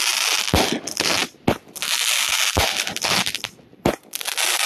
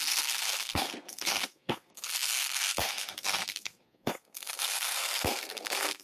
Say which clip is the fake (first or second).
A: second